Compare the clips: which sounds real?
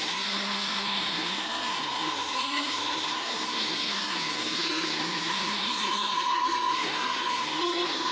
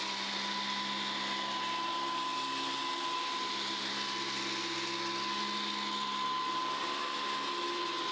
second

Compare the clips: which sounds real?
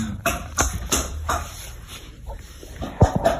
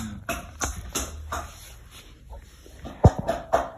second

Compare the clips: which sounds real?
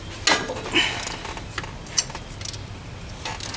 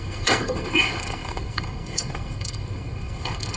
first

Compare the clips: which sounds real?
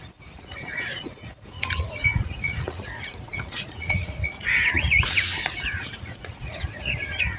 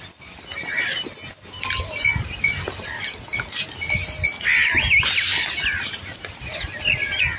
second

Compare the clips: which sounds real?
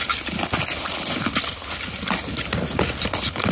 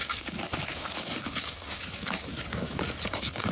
first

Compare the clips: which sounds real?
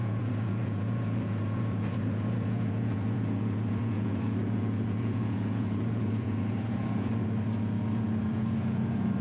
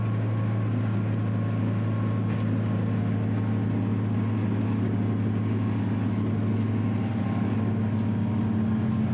second